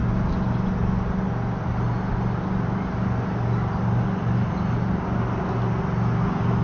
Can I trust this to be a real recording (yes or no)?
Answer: yes